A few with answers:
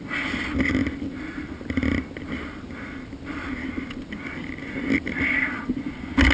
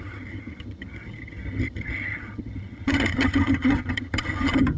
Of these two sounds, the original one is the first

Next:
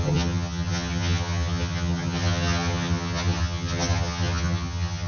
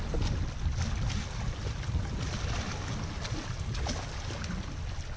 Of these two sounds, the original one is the second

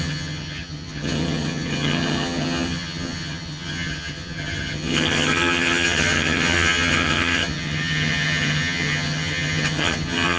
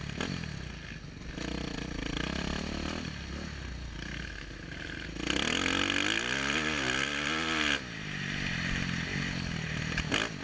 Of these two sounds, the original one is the second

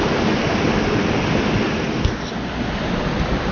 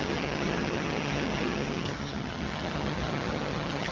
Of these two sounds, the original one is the first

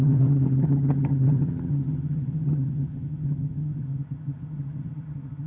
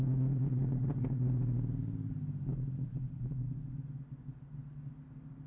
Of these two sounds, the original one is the second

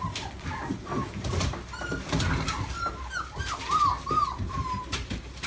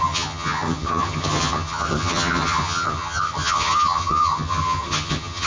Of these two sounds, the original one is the first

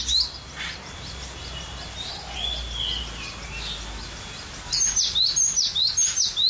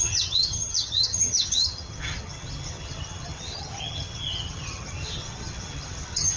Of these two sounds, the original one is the first